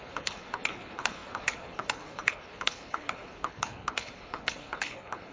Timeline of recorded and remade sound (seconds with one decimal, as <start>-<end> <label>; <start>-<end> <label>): 0.0-5.3 remade